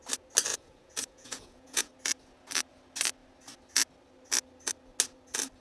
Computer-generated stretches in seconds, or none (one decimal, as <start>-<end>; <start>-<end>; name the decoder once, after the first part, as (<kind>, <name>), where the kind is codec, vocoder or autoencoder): 0.5-1.9 (vocoder, Vocos)